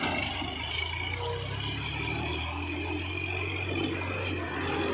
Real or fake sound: real